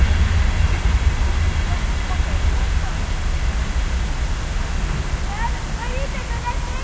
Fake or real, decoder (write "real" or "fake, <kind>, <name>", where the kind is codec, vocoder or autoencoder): real